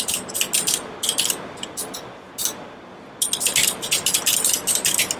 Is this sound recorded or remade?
recorded